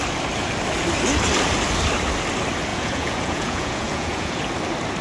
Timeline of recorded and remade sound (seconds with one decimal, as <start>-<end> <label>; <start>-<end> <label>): 0.0-2.7 recorded; 2.7-4.4 remade; 4.4-5.0 recorded